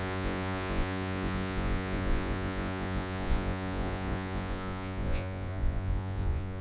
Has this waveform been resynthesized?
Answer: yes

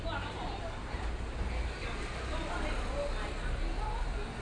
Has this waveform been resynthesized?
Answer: no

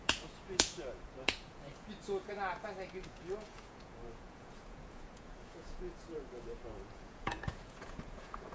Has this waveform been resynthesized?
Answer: yes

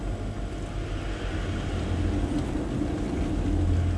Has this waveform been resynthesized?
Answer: no